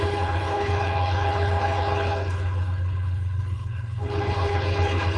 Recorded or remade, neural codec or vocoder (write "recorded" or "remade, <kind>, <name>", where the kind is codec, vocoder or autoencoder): remade, codec, HILCodec